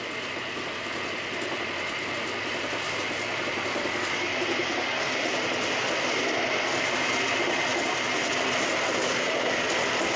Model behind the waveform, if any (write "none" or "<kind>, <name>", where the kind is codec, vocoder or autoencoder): none